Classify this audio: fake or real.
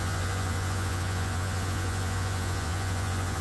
fake